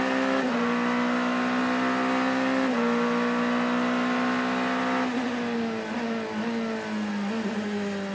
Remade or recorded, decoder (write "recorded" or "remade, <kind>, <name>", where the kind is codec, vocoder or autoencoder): recorded